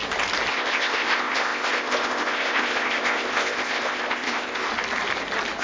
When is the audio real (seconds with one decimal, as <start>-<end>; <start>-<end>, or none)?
0.0-0.5; 4.7-5.6

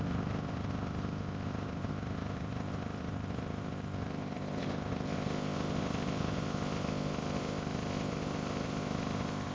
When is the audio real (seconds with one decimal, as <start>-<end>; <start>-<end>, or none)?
none

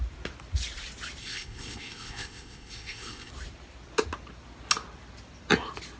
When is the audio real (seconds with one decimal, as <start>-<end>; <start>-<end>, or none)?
0.0-1.2; 3.3-6.0

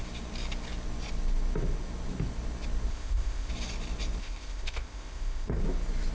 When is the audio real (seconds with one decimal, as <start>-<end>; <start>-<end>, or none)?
0.0-2.9; 3.5-4.2; 5.6-6.1

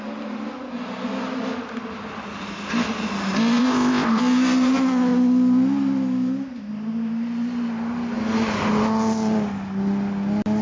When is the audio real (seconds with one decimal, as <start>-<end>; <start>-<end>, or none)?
0.0-3.6; 4.2-10.6